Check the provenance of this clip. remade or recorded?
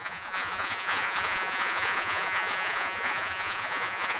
remade